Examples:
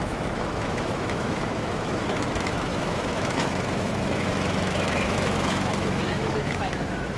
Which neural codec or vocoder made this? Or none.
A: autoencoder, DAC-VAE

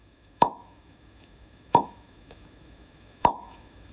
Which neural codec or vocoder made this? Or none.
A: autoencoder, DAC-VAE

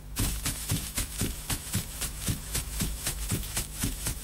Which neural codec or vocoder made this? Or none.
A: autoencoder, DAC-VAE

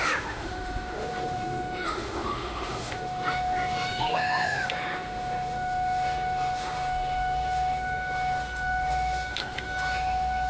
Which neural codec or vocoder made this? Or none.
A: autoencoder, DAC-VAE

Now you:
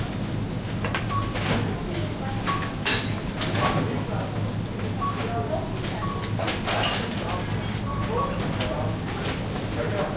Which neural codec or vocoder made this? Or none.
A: none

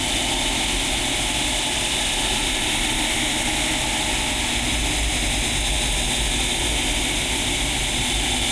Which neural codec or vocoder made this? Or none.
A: none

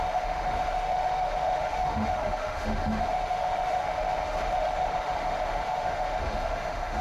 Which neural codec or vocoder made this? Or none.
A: autoencoder, DAC-VAE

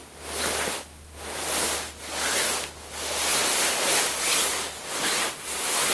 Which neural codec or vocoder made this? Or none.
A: none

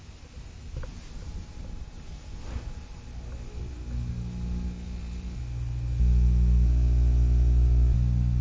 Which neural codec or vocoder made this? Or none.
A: none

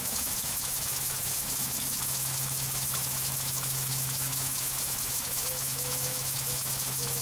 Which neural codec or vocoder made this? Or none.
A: autoencoder, DAC-VAE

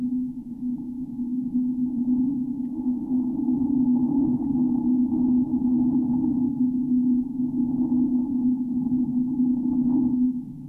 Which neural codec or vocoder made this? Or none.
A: autoencoder, DAC-VAE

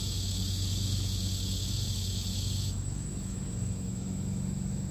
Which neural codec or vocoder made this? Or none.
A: autoencoder, DAC-VAE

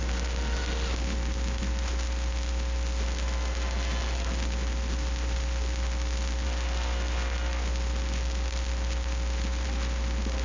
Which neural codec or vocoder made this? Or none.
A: none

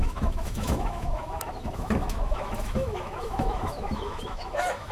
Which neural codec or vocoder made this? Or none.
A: autoencoder, DAC-VAE